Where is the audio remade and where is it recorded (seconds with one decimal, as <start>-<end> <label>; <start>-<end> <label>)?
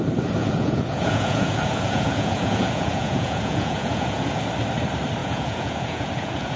0.0-0.4 recorded; 0.4-4.4 remade; 4.4-5.2 recorded; 5.2-6.6 remade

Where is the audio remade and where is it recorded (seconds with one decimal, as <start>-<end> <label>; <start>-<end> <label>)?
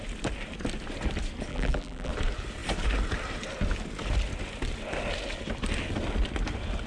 0.0-1.5 recorded; 1.5-2.1 remade; 2.1-6.9 recorded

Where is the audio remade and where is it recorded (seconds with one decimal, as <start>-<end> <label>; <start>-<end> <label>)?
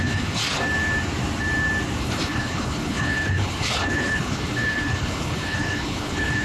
0.0-0.4 remade; 0.4-2.0 recorded; 2.0-6.4 remade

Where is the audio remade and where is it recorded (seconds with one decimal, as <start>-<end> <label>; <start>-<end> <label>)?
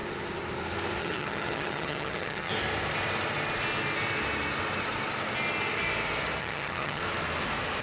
0.0-1.0 recorded; 1.0-2.5 remade; 2.5-6.4 recorded; 6.4-7.0 remade; 7.0-7.8 recorded